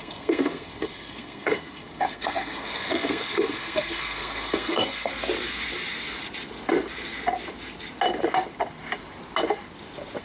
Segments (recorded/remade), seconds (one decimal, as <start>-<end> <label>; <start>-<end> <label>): 0.0-5.1 remade; 5.1-10.2 recorded